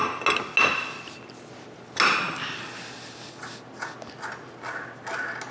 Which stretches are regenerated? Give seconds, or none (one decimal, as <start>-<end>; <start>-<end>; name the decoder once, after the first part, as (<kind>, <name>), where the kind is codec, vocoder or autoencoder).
none

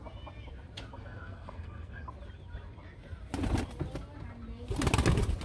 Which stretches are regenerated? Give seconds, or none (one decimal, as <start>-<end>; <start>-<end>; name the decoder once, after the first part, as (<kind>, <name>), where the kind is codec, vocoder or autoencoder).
0.9-2.1 (codec, SNAC)

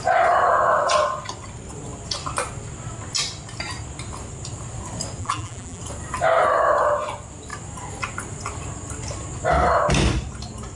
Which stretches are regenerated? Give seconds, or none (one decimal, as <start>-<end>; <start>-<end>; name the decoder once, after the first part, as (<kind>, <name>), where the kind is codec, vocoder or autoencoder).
5.2-5.8 (vocoder, BigVGAN v2)

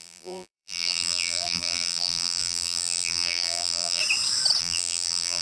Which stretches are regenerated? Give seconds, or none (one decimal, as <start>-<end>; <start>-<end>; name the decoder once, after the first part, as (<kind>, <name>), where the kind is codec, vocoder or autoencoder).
0.0-4.0 (vocoder, BigVGAN v2); 4.6-5.4

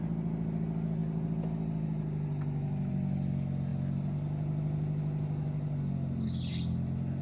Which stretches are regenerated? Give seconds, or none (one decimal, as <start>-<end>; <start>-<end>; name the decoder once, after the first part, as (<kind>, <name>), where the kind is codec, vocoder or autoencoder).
none

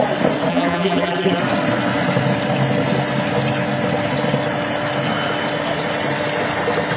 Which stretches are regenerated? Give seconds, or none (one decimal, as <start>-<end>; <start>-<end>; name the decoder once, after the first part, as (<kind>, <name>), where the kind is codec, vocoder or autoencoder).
0.5-1.4 (vocoder, BigVGAN v2)

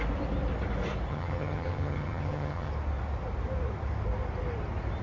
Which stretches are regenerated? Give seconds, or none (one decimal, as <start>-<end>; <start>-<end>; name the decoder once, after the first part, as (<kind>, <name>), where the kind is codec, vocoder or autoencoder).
1.1-2.7 (vocoder, HiFi-GAN)